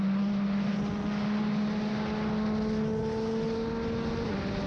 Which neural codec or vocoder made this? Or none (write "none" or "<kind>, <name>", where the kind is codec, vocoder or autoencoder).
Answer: none